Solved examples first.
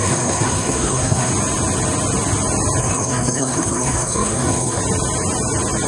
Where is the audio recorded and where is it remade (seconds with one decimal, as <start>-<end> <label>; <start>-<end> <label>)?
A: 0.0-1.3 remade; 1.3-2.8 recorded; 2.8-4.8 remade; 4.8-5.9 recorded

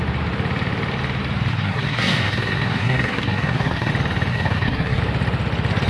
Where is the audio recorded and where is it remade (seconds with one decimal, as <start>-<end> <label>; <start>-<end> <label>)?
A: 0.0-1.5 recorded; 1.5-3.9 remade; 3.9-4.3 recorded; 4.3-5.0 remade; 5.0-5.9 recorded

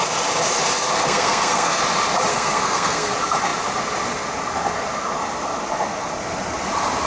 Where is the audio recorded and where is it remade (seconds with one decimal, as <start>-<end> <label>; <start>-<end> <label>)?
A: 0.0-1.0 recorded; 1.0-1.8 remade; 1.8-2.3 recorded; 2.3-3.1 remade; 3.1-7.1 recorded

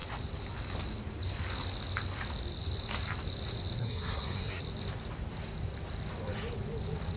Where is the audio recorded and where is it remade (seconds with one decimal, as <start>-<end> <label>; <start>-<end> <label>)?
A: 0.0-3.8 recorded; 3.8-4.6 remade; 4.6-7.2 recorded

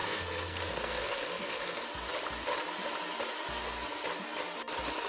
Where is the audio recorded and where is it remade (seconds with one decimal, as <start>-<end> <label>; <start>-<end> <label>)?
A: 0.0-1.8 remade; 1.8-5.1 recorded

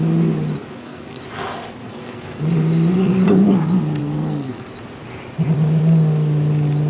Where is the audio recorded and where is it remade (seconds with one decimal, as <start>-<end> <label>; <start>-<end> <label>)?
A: 0.0-0.6 recorded; 0.6-1.2 remade; 1.2-1.8 recorded; 1.8-2.4 remade; 2.4-4.0 recorded; 4.0-4.7 remade; 4.7-6.9 recorded